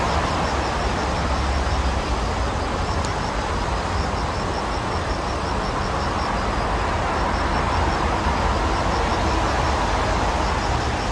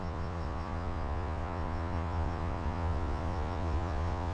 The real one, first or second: first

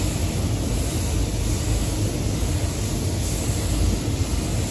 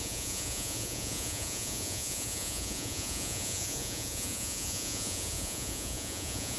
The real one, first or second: first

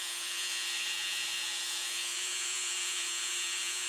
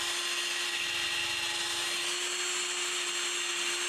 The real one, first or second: second